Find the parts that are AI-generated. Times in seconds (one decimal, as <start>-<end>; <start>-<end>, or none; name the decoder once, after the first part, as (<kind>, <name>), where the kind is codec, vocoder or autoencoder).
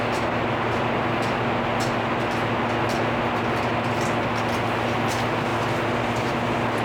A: none